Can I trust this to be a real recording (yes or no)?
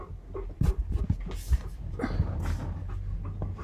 yes